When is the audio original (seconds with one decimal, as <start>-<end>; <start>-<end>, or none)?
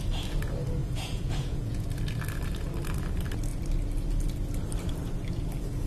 0.0-0.8; 1.9-5.9